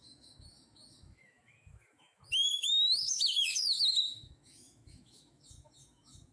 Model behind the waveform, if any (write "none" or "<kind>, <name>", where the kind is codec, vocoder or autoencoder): autoencoder, DAC-VAE